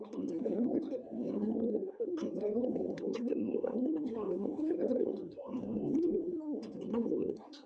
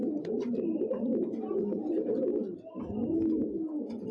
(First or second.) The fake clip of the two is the first